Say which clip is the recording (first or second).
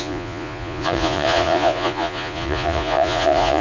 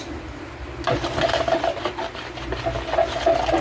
second